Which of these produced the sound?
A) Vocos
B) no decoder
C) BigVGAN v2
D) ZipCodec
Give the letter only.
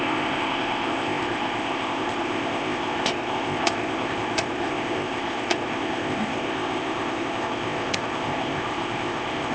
D